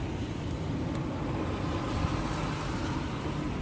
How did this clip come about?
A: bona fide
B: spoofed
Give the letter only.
A